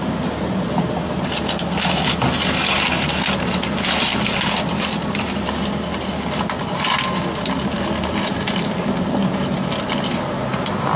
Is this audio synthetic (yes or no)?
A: no